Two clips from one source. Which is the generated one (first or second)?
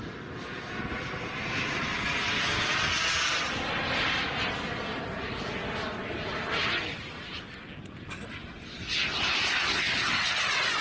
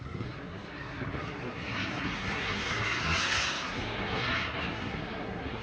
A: second